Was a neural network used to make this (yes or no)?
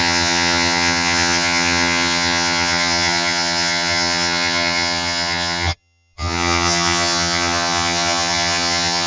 yes